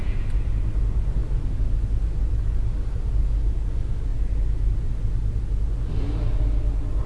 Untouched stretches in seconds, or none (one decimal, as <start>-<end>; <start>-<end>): 0.0-7.1